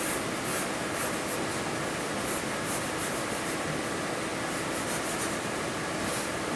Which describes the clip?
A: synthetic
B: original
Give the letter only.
B